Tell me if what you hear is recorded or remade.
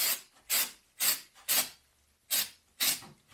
recorded